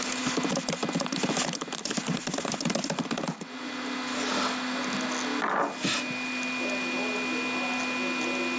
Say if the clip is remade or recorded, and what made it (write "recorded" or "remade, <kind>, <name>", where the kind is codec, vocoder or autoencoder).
recorded